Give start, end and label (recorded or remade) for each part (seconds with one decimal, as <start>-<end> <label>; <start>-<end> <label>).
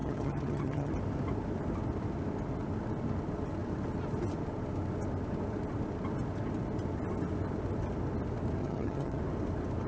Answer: 0.0-0.9 remade; 0.9-8.6 recorded; 8.6-9.2 remade; 9.2-9.9 recorded